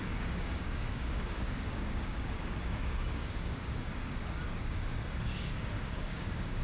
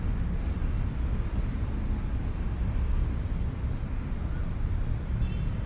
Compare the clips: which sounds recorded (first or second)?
second